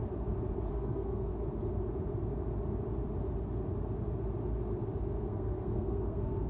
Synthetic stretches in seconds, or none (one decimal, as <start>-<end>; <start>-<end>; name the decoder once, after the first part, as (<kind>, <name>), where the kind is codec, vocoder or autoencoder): 0.7-1.3 (codec, SNAC); 5.2-6.5